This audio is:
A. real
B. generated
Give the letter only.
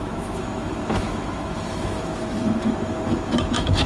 B